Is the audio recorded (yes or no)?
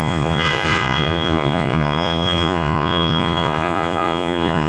no